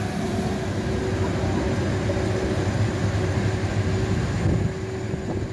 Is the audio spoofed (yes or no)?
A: no